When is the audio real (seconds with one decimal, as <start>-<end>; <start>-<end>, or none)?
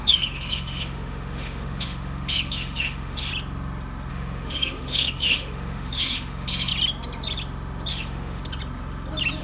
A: 3.3-4.1; 6.7-7.9; 8.4-9.4